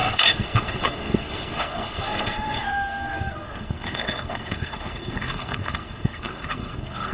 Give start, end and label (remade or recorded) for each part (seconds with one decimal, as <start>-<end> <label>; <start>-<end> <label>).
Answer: 0.0-7.1 remade